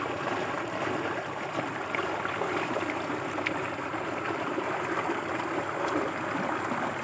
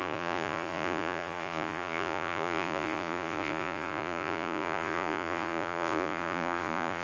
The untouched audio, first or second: first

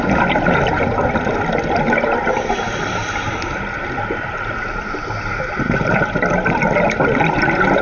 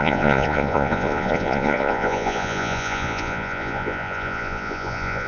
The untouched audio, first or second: first